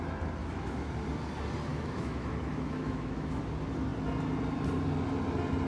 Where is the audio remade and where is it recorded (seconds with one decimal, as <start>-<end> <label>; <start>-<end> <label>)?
0.0-0.4 recorded; 0.4-0.9 remade; 0.9-1.7 recorded; 1.7-3.4 remade; 3.4-5.7 recorded